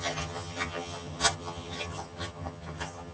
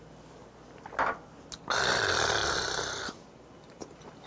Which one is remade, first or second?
first